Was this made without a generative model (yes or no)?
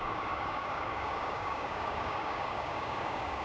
no